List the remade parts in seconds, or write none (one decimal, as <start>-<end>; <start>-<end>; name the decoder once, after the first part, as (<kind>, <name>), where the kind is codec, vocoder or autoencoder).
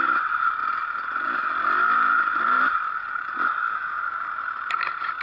0.6-2.7 (vocoder, BigVGAN v2)